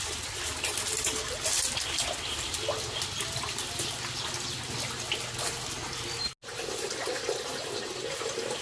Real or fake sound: real